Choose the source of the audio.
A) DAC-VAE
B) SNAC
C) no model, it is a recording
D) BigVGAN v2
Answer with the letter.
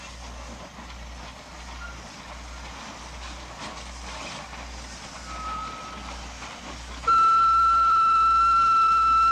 C